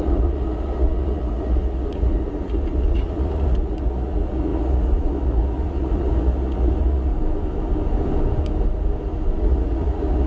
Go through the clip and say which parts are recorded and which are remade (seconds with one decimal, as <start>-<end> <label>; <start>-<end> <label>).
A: 0.0-7.1 remade; 7.1-9.4 recorded; 9.4-10.3 remade